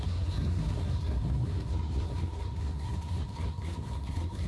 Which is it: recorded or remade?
remade